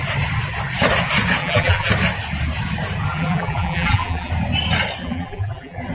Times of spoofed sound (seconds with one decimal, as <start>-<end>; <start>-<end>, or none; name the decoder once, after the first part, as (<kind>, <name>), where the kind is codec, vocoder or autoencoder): 1.4-1.9 (vocoder, BigVGAN v2); 3.1-4.3; 5.0-5.9